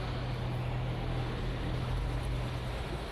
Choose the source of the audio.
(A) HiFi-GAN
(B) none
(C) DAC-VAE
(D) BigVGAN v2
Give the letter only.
B